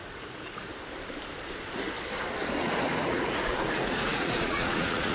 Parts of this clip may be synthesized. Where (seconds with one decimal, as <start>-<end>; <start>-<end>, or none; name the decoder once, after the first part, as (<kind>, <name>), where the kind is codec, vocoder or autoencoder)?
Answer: 0.0-0.7 (vocoder, Vocos); 2.6-5.1